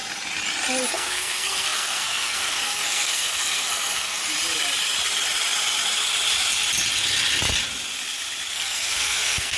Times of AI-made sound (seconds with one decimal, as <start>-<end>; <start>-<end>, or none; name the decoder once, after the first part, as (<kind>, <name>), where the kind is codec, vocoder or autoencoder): 0.9-4.2 (codec, SNAC); 8.5-9.6